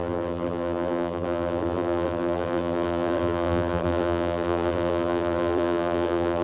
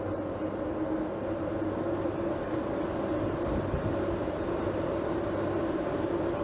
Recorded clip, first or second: second